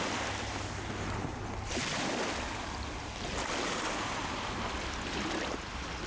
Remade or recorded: recorded